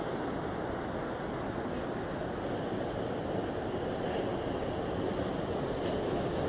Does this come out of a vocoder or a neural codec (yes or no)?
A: no